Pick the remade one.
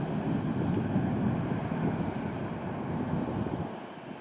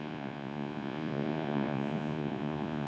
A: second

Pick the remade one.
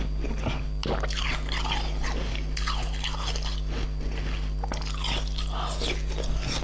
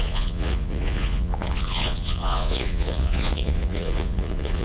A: second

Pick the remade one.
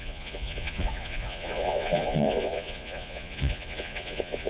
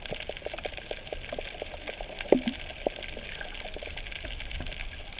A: first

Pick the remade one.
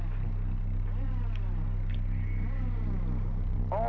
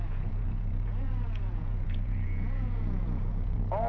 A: second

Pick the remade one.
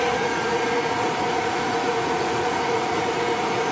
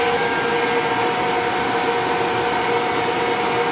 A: first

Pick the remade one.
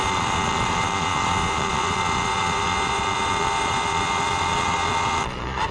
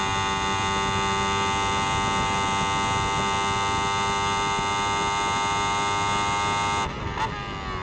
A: first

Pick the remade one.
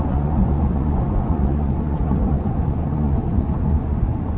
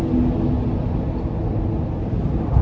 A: first